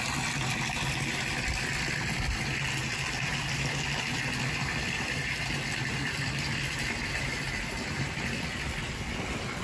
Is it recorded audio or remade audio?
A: recorded